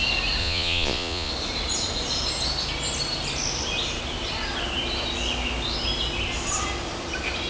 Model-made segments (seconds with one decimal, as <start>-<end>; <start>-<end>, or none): 0.4-1.3